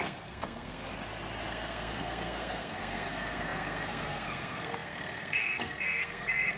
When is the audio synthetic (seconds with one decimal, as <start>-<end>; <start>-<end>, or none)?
0.0-0.8; 1.5-6.6